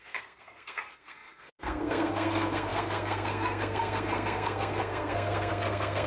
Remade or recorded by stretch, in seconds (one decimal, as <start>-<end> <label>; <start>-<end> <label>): 0.0-6.1 remade